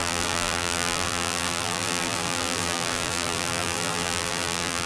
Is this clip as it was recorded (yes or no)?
no